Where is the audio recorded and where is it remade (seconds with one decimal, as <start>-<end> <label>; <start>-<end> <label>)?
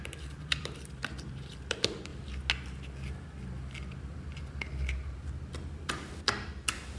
0.0-2.1 remade; 2.1-5.9 recorded; 5.9-7.0 remade